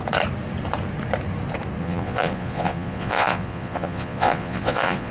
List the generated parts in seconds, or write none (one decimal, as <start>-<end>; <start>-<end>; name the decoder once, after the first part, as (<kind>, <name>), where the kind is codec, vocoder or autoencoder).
1.8-5.1 (vocoder, Vocos)